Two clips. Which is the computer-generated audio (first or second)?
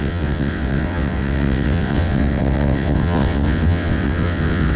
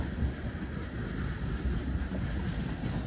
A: first